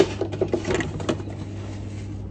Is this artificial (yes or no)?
no